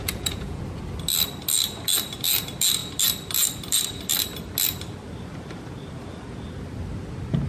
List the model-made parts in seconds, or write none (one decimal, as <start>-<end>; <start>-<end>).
0.0-0.6